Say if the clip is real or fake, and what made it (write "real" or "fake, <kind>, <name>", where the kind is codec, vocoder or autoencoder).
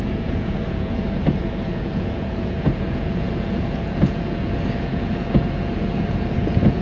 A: fake, vocoder, Vocos